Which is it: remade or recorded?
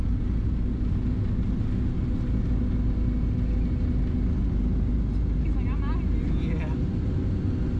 recorded